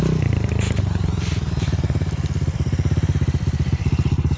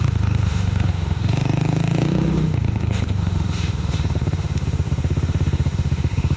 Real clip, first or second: first